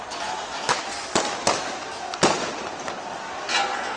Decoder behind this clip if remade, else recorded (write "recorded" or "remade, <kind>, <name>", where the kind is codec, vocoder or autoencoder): recorded